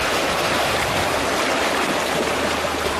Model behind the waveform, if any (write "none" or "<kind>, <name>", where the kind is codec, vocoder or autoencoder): none